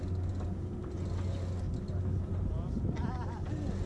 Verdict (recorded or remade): recorded